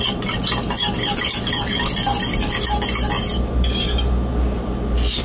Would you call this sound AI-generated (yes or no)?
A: no